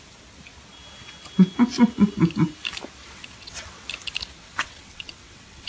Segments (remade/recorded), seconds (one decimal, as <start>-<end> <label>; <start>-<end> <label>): 0.0-3.0 recorded; 3.0-3.9 remade; 3.9-4.4 recorded; 4.4-5.7 remade